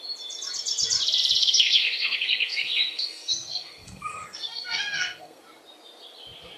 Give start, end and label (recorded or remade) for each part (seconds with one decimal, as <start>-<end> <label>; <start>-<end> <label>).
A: 0.0-1.4 recorded; 1.4-5.4 remade; 5.4-6.6 recorded